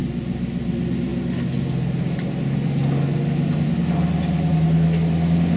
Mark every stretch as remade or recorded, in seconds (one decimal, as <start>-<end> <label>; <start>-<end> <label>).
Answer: 0.0-5.6 recorded